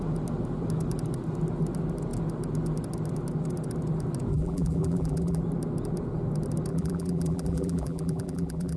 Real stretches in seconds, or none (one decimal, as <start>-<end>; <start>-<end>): 0.0-4.3; 5.4-6.7